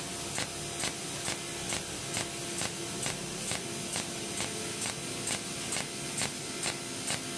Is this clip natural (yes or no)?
yes